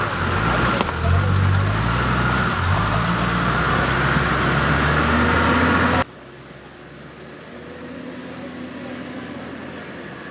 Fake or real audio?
real